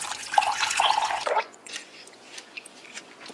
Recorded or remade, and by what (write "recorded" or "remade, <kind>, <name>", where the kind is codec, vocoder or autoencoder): remade, vocoder, Vocos